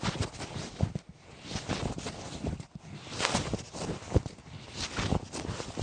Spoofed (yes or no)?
no